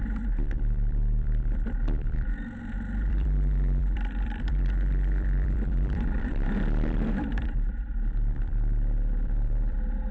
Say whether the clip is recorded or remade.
remade